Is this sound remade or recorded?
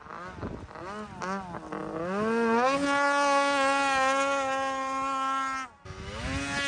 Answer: recorded